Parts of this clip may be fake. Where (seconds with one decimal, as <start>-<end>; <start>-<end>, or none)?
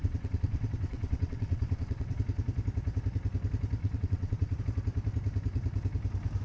0.0-2.2; 3.8-4.6